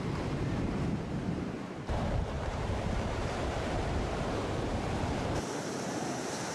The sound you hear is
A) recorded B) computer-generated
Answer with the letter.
B